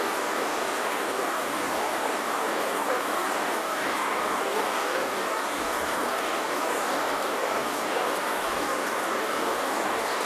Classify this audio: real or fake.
fake